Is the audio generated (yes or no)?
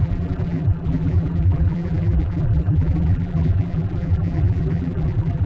yes